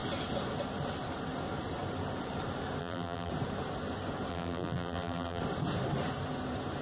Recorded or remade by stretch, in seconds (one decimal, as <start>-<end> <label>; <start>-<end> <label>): 0.0-2.8 recorded; 2.8-3.3 remade; 3.3-4.3 recorded; 4.3-5.4 remade; 5.4-6.8 recorded